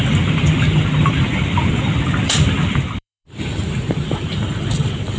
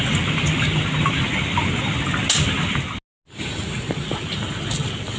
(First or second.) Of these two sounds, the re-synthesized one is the first